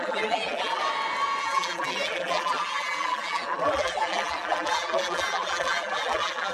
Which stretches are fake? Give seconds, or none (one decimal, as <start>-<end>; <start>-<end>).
0.0-0.8; 1.4-6.5